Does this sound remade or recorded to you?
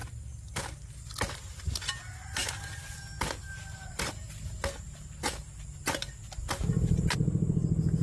recorded